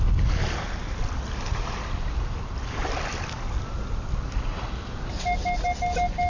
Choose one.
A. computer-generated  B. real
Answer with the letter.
B